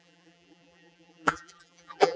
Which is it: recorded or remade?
remade